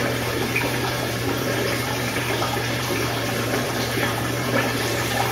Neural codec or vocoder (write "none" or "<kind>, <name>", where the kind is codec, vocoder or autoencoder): vocoder, BigVGAN v2